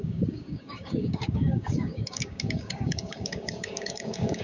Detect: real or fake fake